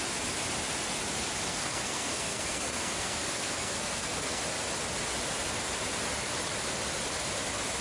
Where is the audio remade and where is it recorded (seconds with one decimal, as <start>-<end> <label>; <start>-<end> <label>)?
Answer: 0.0-1.5 recorded; 1.5-4.4 remade; 4.4-7.8 recorded